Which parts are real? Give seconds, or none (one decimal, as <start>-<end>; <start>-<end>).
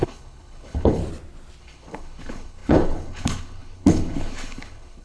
1.0-1.6